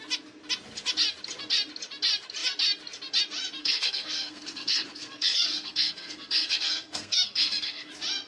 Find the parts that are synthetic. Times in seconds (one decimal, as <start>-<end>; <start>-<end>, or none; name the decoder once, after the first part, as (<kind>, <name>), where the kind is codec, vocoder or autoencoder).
3.6-7.9 (codec, SNAC)